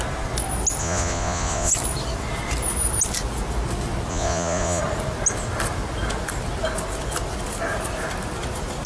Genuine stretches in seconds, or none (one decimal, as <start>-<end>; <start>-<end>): 0.0-0.8; 1.7-4.1; 4.8-8.9